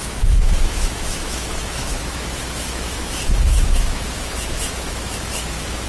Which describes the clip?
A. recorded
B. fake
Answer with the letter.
B